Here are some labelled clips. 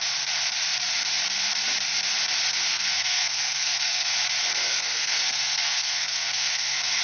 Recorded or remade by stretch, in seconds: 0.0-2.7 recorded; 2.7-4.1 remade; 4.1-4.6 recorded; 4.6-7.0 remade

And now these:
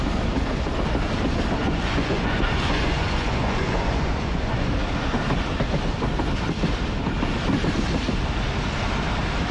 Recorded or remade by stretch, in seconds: 0.0-1.6 recorded; 1.6-4.7 remade; 4.7-9.5 recorded

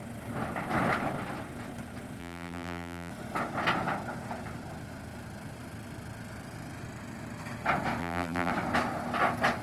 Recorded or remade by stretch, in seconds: 0.0-2.2 recorded; 2.2-3.1 remade; 3.1-8.0 recorded; 8.0-8.5 remade; 8.5-9.6 recorded

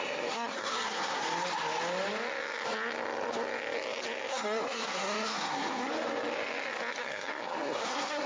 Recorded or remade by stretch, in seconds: 0.0-1.2 remade; 1.2-4.3 recorded; 4.3-5.9 remade; 5.9-7.0 recorded; 7.0-8.3 remade

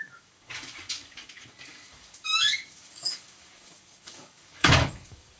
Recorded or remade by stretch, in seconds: 0.0-5.4 remade

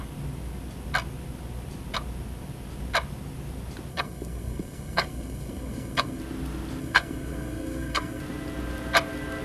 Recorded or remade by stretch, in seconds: 0.0-3.9 recorded; 3.9-6.2 remade; 6.2-6.8 recorded; 6.8-8.2 remade; 8.2-9.4 recorded